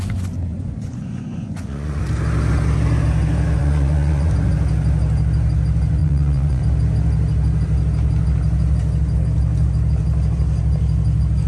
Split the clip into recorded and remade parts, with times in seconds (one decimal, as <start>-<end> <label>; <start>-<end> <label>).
0.0-0.5 recorded; 0.5-2.0 remade; 2.0-3.6 recorded; 3.6-4.3 remade; 4.3-6.0 recorded; 6.0-6.6 remade; 6.6-11.5 recorded